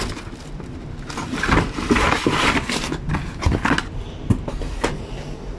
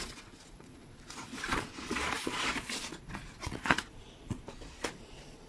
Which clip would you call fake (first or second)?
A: second